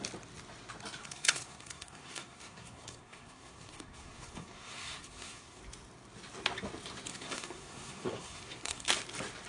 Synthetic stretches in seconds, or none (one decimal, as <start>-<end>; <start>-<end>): 1.0-5.6; 7.1-8.9